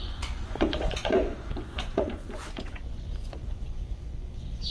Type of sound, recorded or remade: remade